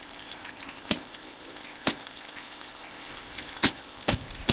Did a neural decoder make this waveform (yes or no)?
yes